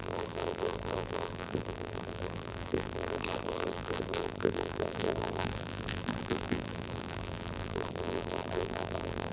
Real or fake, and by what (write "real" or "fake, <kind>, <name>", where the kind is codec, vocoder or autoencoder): fake, vocoder, BigVGAN v2